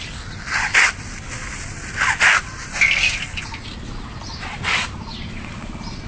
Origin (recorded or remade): recorded